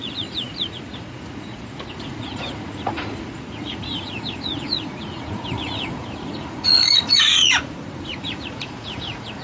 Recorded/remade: remade